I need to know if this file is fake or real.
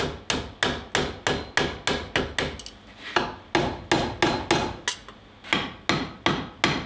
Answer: real